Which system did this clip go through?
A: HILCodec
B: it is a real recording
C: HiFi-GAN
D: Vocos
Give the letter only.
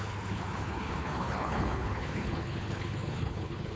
A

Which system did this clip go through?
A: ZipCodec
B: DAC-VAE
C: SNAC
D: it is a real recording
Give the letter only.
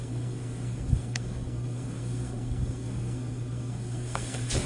C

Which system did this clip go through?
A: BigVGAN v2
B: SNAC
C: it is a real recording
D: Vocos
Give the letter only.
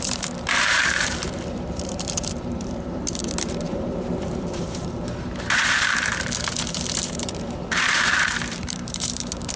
A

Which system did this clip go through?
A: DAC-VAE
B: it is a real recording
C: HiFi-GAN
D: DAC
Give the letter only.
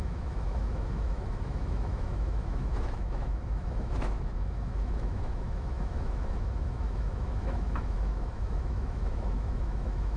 A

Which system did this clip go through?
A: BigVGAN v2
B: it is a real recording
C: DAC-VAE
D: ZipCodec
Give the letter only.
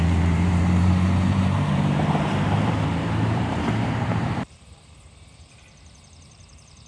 A